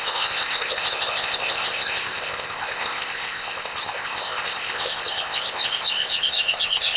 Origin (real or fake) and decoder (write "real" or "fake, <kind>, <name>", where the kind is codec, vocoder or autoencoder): fake, codec, ZipCodec